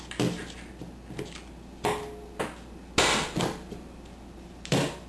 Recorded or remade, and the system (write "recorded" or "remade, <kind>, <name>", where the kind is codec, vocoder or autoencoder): recorded